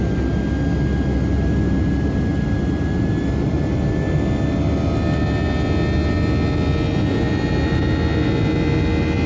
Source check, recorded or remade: recorded